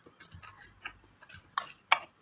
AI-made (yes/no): no